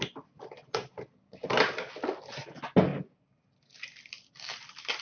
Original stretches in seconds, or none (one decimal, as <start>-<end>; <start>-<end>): 0.0-5.0